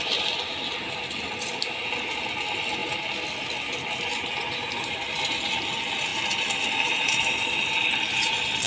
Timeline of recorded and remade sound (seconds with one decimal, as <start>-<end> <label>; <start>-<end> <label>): 0.0-8.7 recorded